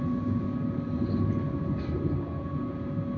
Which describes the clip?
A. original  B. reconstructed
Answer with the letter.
A